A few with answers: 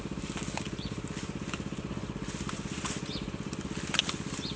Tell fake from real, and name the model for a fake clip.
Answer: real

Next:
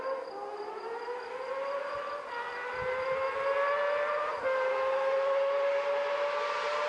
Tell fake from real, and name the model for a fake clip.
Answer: real